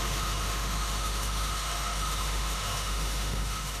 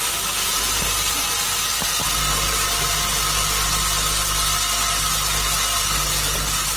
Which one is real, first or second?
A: second